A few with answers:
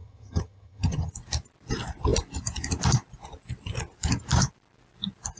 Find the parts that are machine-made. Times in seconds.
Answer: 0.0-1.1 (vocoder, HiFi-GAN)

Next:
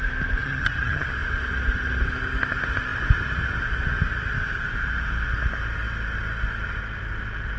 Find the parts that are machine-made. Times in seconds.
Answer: 0.4-1.1 (vocoder, HiFi-GAN)